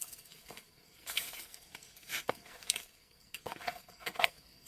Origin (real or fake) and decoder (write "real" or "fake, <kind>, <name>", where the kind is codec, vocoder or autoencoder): fake, codec, SNAC